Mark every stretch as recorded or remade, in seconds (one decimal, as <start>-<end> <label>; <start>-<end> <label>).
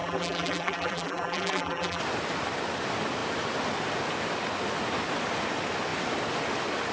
0.0-2.0 remade; 2.0-6.9 recorded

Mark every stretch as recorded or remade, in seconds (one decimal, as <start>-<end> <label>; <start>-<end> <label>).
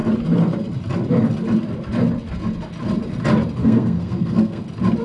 0.0-3.6 recorded; 3.6-4.6 remade; 4.6-5.0 recorded